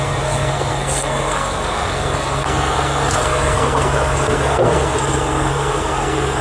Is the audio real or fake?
fake